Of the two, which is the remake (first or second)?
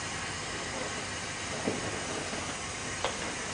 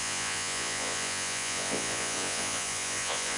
second